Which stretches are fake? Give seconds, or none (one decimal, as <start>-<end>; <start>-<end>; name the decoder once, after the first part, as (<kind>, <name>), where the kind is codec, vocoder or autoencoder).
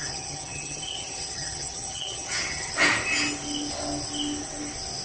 0.0-2.7 (vocoder, HiFi-GAN)